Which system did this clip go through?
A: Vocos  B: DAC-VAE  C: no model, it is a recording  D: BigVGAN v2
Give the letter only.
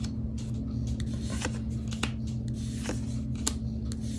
C